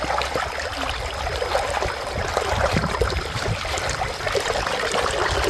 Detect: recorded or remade recorded